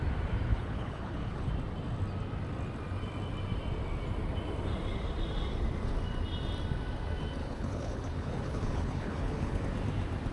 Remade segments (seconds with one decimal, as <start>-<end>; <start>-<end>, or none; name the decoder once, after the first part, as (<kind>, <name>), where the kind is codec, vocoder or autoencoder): 0.5-1.5 (codec, HILCodec); 7.4-9.6